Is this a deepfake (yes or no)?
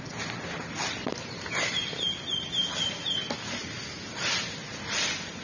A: no